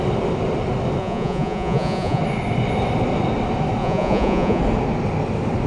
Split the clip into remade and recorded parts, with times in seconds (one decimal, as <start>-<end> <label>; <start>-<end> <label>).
0.0-1.0 recorded; 1.0-2.2 remade; 2.2-3.8 recorded; 3.8-4.6 remade; 4.6-5.7 recorded